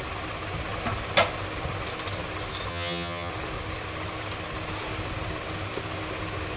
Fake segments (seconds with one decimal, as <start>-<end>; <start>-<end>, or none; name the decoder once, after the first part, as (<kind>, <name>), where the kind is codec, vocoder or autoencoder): 2.7-3.3 (vocoder, HiFi-GAN)